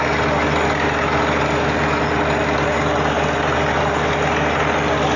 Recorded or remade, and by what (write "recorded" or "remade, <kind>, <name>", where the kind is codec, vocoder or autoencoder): recorded